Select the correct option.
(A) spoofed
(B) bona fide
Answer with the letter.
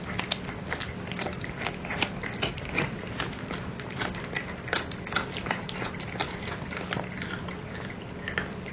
B